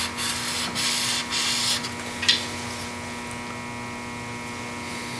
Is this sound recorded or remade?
recorded